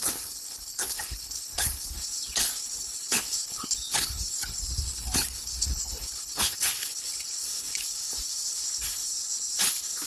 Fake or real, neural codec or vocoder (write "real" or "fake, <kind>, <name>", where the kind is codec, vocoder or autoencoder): fake, codec, HILCodec